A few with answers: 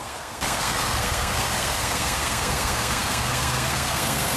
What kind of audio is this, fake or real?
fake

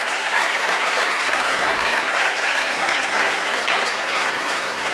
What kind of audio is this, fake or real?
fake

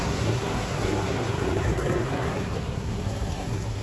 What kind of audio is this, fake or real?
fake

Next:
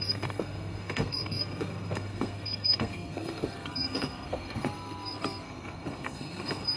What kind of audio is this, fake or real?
fake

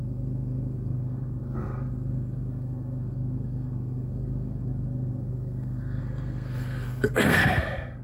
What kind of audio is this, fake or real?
fake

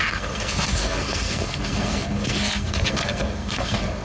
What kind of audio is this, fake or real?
fake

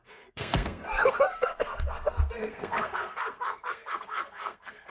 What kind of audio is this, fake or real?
fake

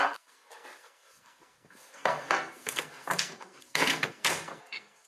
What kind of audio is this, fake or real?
fake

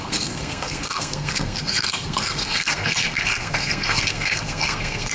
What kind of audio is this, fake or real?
fake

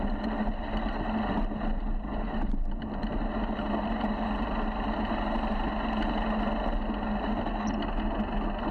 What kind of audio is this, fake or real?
real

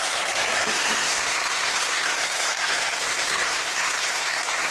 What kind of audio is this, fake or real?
fake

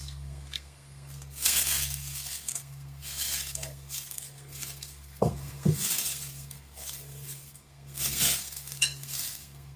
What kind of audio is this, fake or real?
fake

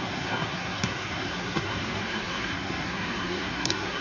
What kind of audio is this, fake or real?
fake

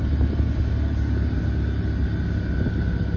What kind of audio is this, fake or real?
real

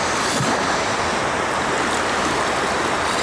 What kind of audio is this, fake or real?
real